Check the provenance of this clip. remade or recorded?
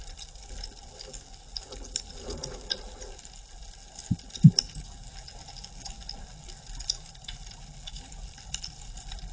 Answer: recorded